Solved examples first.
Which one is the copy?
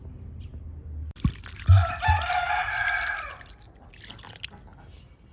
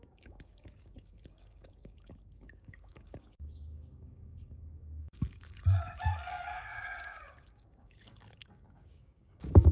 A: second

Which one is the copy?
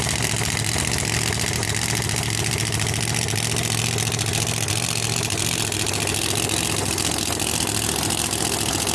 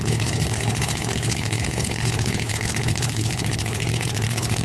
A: second